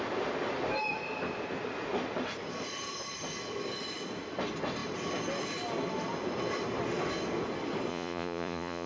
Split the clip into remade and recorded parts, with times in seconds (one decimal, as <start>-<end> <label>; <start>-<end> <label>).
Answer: 0.0-7.9 recorded; 7.9-8.9 remade